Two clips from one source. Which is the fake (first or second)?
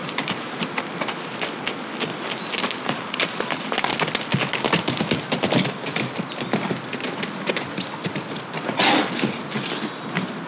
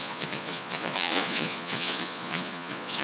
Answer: second